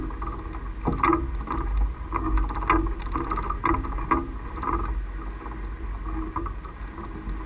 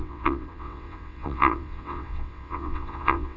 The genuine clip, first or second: first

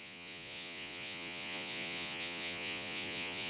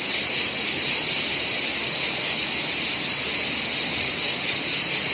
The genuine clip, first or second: second